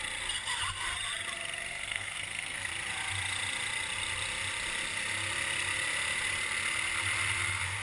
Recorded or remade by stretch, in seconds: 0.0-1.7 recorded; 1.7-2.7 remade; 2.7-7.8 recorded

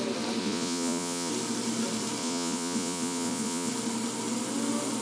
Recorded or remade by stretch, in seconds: 0.0-0.4 recorded; 0.4-1.3 remade; 1.3-2.2 recorded; 2.2-3.7 remade; 3.7-5.0 recorded

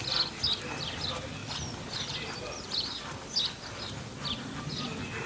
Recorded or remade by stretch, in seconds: 0.0-5.3 recorded

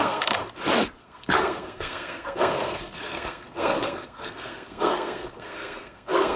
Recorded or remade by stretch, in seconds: 0.0-0.4 remade; 0.4-1.0 recorded; 1.0-6.4 remade

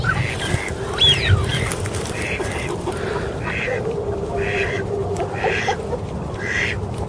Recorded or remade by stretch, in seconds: 0.0-1.5 recorded; 1.5-5.8 remade; 5.8-7.1 recorded

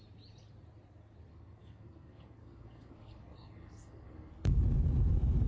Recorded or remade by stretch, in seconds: 0.0-1.3 recorded; 1.3-4.6 remade; 4.6-5.5 recorded